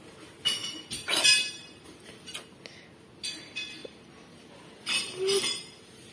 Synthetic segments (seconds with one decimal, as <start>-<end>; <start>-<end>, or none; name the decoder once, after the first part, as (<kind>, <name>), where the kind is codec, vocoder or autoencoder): 0.6-2.3 (vocoder, BigVGAN v2); 3.8-6.1